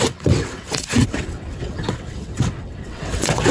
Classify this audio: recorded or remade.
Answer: remade